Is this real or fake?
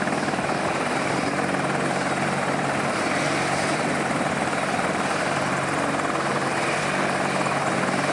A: fake